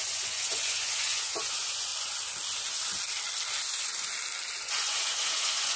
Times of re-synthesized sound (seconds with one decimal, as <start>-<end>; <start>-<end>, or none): 0.0-1.9; 4.6-5.8